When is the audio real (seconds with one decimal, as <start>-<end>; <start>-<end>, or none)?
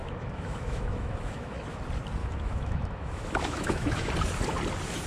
1.8-2.2; 4.1-5.1